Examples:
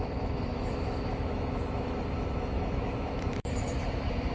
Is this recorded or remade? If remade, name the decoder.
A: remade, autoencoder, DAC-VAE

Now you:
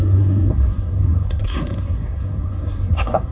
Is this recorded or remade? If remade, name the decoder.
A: remade, codec, SNAC